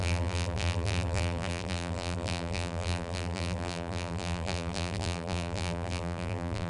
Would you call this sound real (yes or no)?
no